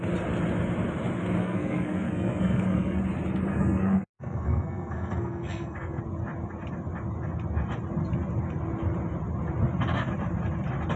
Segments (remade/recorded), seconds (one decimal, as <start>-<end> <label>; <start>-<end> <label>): 0.0-1.4 recorded; 1.4-3.0 remade; 3.0-3.5 recorded; 3.5-6.0 remade; 6.0-11.0 recorded